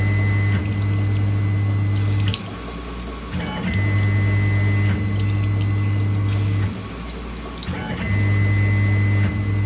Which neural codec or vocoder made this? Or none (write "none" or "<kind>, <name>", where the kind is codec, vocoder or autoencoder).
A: none